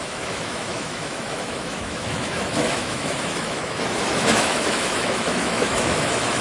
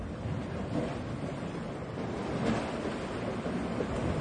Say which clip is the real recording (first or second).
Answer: second